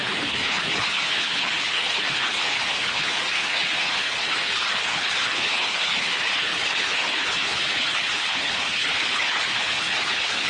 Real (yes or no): no